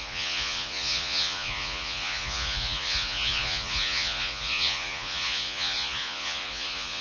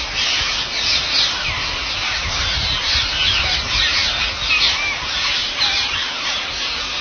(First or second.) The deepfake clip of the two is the first